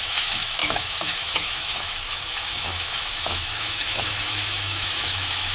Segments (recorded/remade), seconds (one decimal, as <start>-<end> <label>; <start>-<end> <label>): 0.0-5.5 remade